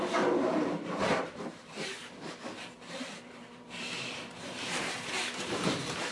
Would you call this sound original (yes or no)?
no